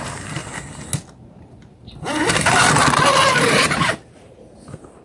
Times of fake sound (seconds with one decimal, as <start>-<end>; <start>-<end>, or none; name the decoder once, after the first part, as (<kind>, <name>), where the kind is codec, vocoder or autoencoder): 0.0-0.4 (vocoder, BigVGAN v2); 1.4-2.8; 3.5-5.0